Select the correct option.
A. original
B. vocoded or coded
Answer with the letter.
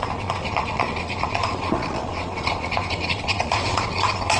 B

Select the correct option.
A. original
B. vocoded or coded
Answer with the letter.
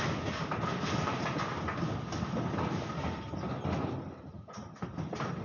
A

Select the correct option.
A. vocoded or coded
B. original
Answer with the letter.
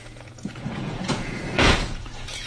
A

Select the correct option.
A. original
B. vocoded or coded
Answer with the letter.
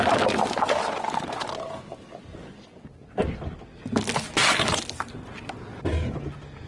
A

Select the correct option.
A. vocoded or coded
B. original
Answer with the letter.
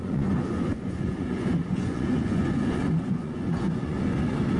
A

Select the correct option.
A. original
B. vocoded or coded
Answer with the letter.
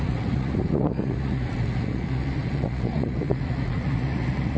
B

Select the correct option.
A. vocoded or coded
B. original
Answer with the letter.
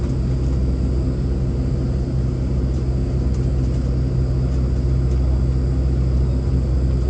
B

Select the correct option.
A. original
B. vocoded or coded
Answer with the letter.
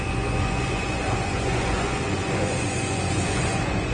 B